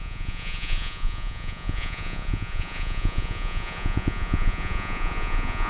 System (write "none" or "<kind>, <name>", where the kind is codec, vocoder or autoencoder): vocoder, Vocos